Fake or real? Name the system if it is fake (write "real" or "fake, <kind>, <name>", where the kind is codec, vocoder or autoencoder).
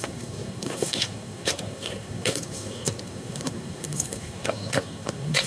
fake, codec, SNAC